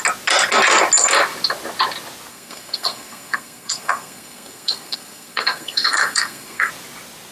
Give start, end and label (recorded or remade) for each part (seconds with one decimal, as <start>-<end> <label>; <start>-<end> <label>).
0.0-2.3 recorded; 2.3-6.7 remade; 6.7-7.3 recorded